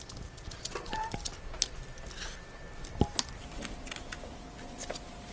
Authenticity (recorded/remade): recorded